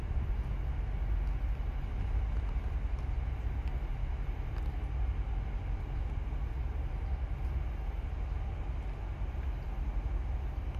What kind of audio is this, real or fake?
real